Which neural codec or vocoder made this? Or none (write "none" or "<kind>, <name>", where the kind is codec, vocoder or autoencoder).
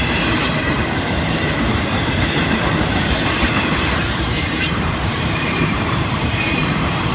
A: vocoder, BigVGAN v2